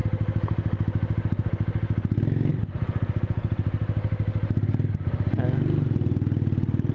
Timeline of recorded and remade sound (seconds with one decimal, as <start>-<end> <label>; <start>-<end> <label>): 0.0-6.9 recorded